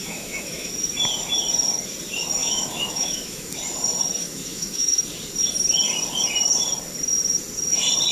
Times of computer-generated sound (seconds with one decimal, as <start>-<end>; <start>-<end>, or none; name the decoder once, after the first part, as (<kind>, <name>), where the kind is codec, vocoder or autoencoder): 0.0-0.7 (autoencoder, DAC-VAE); 2.4-3.5; 4.2-5.0